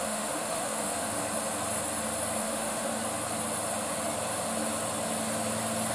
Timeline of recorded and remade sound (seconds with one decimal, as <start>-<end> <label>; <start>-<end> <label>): 0.0-1.2 remade; 1.2-2.4 recorded; 2.4-2.9 remade; 2.9-5.9 recorded